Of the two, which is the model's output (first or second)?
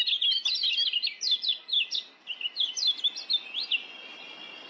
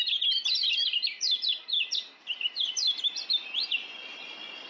second